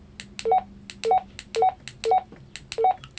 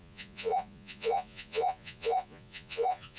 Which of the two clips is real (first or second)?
first